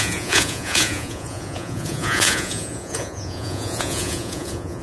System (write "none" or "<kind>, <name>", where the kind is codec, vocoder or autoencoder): vocoder, Vocos